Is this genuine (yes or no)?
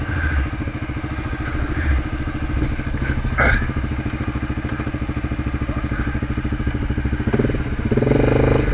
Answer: yes